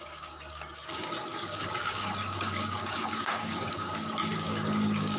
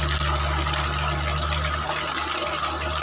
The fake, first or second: first